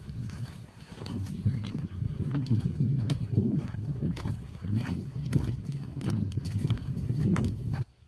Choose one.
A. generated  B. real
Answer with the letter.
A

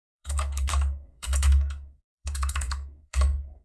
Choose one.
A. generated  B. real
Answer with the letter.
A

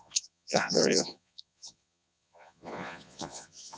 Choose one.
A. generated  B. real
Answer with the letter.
A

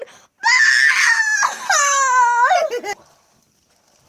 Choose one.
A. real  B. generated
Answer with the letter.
A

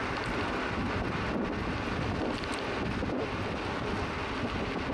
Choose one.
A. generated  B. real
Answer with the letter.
B